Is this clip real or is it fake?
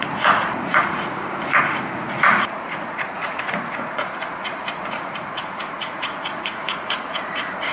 fake